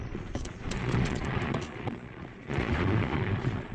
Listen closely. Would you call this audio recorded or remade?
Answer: remade